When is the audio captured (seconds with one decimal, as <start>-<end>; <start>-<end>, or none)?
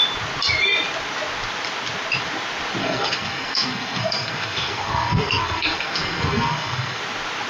0.0-2.8; 7.0-7.5